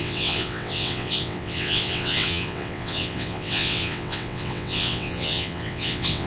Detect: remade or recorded remade